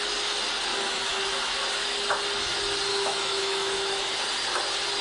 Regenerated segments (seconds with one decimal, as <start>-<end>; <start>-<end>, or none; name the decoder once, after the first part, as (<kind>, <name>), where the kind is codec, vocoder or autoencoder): 0.7-1.6 (autoencoder, DAC-VAE); 2.9-4.1